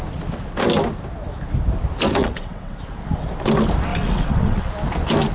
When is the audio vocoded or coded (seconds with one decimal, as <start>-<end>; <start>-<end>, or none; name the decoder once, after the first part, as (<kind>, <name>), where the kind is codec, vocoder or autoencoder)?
2.2-2.8 (vocoder, WaveNeXt); 3.9-4.7